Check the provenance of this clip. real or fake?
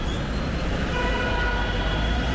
real